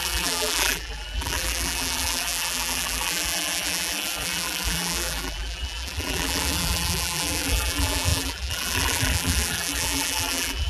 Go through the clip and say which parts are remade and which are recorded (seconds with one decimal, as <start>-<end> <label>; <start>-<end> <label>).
0.0-10.7 remade